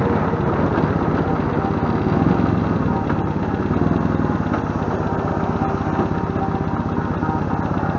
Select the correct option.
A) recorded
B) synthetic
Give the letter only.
A